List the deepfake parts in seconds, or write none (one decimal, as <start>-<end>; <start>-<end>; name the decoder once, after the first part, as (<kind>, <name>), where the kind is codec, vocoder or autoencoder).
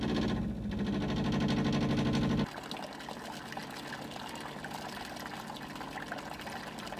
none